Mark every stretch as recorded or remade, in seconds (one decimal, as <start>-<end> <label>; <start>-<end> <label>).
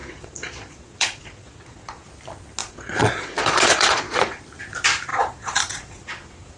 0.0-2.1 remade; 2.1-2.6 recorded; 2.6-4.4 remade; 4.4-5.1 recorded; 5.1-6.6 remade